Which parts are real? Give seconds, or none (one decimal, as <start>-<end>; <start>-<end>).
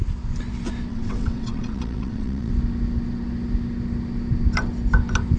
0.0-0.9; 2.5-5.4